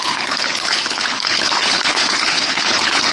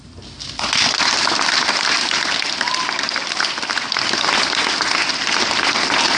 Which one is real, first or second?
second